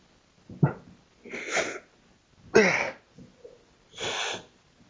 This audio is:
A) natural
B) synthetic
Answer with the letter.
A